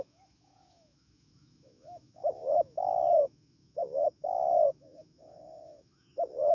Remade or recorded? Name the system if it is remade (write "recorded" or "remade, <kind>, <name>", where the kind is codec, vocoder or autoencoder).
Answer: remade, autoencoder, DAC-VAE